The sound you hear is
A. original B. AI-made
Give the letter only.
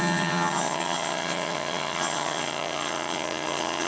B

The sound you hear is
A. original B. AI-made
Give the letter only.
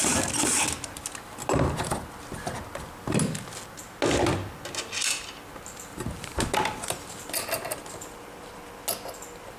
A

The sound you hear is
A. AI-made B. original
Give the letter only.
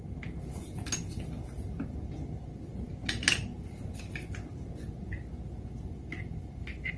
B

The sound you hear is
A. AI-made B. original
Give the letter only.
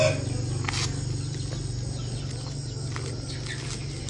B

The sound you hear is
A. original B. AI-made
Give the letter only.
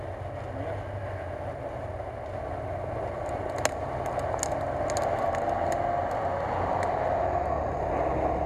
A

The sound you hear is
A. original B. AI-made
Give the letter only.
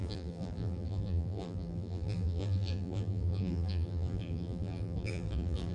B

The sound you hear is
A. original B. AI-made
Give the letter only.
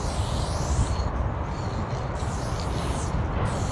A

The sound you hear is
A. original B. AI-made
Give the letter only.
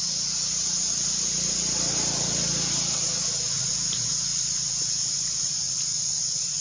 A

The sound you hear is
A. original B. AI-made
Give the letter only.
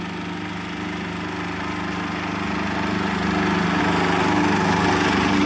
A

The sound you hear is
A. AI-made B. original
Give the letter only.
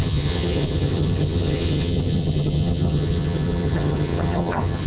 A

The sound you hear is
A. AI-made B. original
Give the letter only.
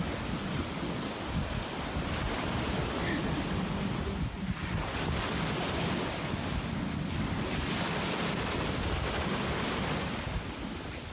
B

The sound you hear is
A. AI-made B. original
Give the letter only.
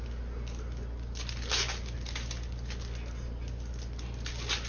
B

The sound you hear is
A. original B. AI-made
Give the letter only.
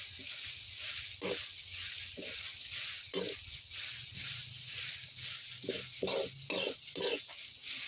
A